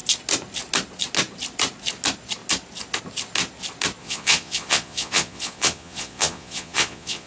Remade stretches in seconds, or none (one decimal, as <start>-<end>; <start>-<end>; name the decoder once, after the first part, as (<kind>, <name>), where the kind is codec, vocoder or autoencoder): 4.0-7.3 (vocoder, Vocos)